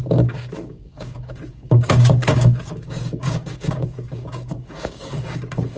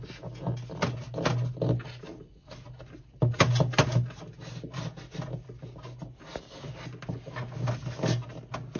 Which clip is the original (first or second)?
second